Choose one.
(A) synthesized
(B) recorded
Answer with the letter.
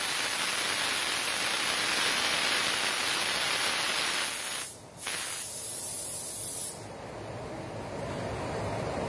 B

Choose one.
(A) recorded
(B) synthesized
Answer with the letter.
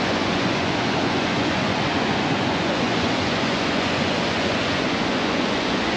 B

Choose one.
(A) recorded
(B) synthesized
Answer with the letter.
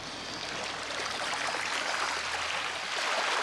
A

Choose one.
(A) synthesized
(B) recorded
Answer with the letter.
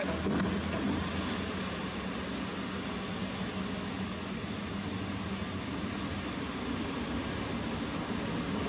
B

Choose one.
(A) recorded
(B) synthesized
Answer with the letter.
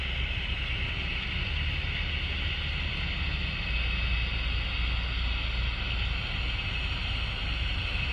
A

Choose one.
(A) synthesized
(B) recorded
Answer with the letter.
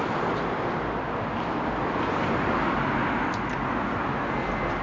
B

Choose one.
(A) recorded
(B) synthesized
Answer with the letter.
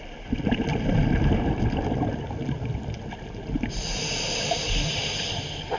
A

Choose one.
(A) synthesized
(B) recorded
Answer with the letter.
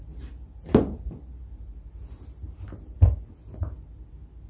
B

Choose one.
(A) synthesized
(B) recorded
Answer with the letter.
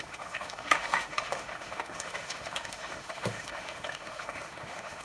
A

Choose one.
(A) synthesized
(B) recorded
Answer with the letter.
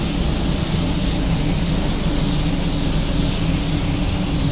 B